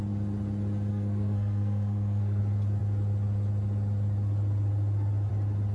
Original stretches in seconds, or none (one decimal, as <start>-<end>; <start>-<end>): 0.0-0.9; 2.4-5.7